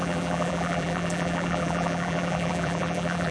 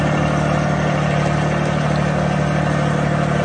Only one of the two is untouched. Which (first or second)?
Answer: second